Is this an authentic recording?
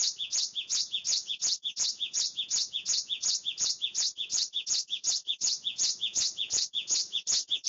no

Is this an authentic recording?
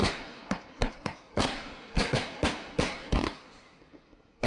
no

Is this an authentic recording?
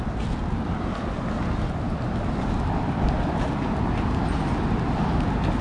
yes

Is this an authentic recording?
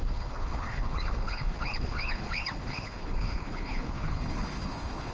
no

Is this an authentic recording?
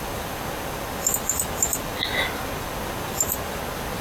yes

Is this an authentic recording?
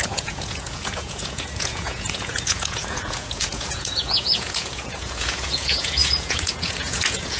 no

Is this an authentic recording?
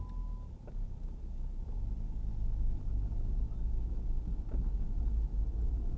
yes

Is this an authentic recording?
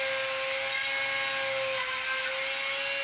yes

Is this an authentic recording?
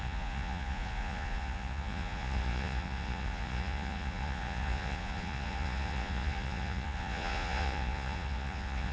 no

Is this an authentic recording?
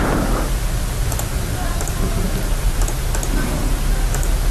yes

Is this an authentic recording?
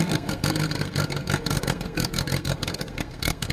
no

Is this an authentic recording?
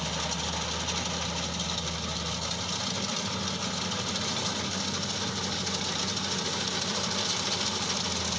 yes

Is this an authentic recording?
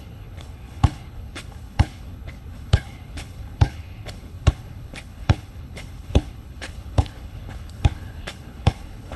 no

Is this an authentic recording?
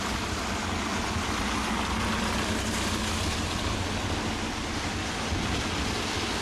yes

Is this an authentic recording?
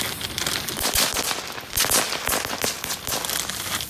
yes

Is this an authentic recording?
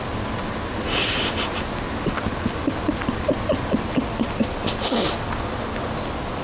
yes